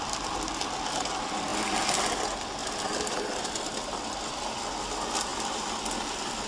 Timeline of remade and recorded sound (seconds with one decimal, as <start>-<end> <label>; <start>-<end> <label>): 0.0-6.5 recorded